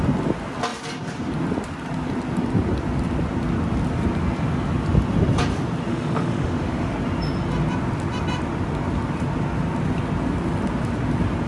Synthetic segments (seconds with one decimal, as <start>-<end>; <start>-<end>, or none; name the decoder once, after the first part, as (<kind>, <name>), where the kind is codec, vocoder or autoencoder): 5.9-6.9 (autoencoder, DAC-VAE)